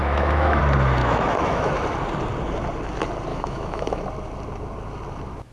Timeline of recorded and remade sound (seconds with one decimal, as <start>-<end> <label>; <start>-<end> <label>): 0.0-0.6 remade; 0.6-1.0 recorded; 1.0-1.7 remade; 1.7-3.3 recorded; 3.3-4.0 remade; 4.0-5.5 recorded